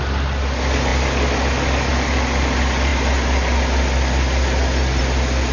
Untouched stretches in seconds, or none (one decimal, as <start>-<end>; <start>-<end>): 0.0-5.5